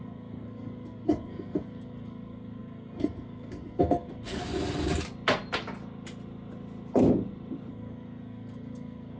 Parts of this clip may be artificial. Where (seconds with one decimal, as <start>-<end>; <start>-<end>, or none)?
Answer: 0.0-4.4; 7.7-9.2